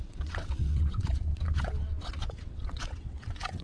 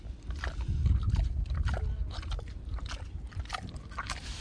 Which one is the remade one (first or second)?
first